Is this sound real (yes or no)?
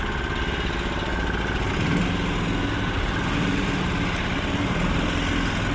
yes